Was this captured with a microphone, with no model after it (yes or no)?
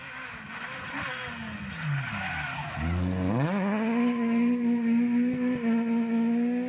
yes